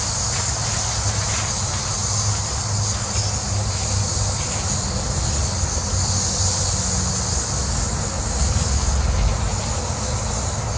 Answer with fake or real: real